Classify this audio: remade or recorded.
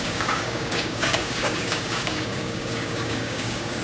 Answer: remade